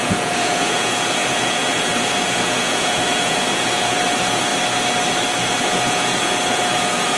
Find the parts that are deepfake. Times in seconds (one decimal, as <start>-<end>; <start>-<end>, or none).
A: 0.0-4.5; 5.6-7.2